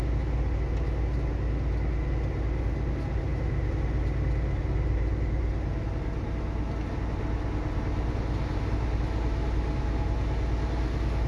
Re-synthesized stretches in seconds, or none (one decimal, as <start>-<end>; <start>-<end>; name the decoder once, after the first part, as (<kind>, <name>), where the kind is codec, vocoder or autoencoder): none